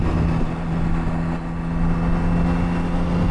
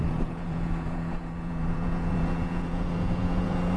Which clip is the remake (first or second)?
second